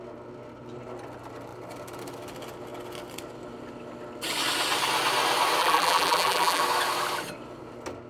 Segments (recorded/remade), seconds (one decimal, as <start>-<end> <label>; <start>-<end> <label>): 0.0-5.6 recorded; 5.6-6.6 remade; 6.6-8.1 recorded